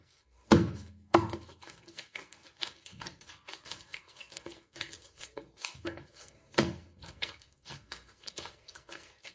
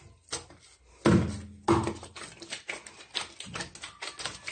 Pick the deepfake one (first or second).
first